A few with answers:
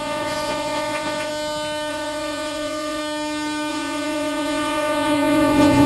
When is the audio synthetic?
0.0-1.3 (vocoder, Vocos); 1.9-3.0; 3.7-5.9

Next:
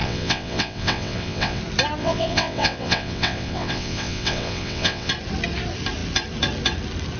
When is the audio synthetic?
0.0-1.6 (vocoder, WaveNeXt); 2.0-5.1